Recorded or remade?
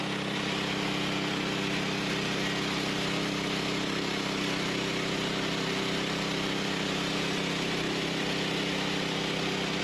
recorded